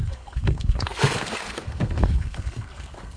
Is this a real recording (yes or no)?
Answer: no